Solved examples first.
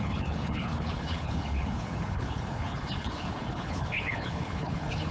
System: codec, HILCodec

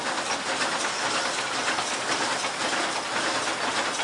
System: none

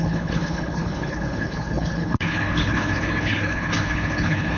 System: codec, HILCodec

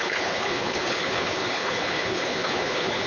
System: codec, HILCodec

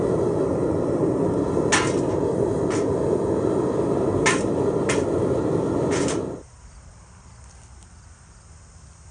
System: none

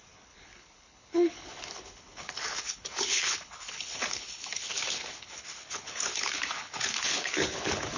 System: codec, HILCodec